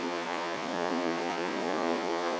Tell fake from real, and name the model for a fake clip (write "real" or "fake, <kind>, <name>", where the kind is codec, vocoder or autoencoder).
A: fake, vocoder, Vocos